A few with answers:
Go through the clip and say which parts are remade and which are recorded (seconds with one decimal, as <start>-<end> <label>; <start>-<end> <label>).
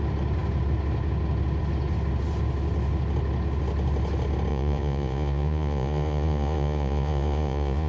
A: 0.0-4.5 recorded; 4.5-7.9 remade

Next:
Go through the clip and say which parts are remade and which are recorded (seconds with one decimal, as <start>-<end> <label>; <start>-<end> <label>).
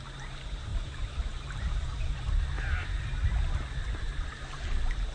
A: 0.0-0.7 recorded; 0.7-2.4 remade; 2.4-5.1 recorded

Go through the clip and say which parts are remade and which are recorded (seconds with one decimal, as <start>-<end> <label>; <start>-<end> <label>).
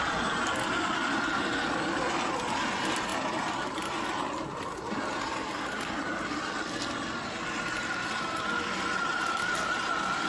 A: 0.0-9.1 recorded; 9.1-9.7 remade; 9.7-10.3 recorded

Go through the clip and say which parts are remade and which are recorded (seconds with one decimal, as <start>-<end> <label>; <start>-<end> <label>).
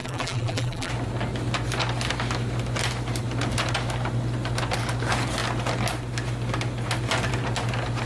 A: 0.0-0.9 remade; 0.9-8.1 recorded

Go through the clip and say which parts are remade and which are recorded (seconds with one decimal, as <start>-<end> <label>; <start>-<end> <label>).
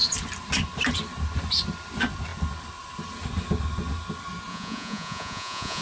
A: 0.0-4.5 recorded; 4.5-5.8 remade